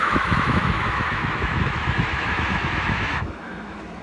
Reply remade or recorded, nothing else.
remade